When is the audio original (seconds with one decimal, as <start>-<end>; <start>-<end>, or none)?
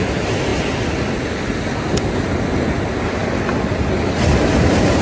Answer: 0.0-3.2; 4.6-5.0